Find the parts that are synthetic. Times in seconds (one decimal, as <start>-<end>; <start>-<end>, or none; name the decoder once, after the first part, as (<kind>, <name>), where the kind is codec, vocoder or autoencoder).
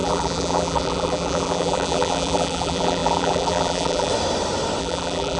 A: 0.0-4.1 (vocoder, BigVGAN v2); 4.8-5.4